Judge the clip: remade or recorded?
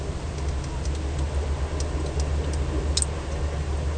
recorded